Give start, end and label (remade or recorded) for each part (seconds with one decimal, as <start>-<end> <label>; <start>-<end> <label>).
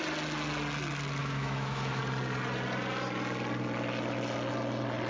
0.0-1.2 recorded; 1.2-2.0 remade; 2.0-5.1 recorded